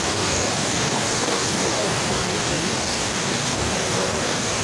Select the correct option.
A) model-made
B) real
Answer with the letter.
A